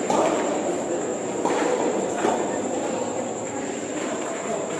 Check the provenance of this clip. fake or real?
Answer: fake